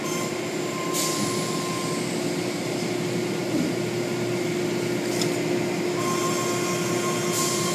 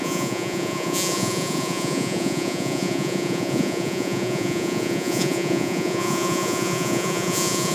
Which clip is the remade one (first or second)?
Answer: second